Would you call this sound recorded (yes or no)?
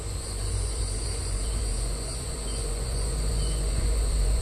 no